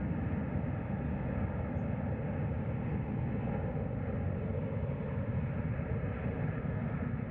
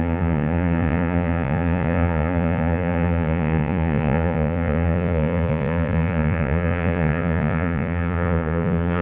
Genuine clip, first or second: first